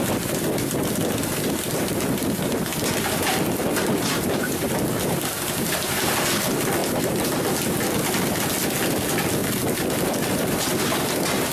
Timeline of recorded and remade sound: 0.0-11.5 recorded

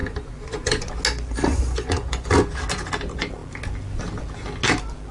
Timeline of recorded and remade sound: 0.0-0.9 remade; 0.9-1.5 recorded; 1.5-2.3 remade; 2.3-5.1 recorded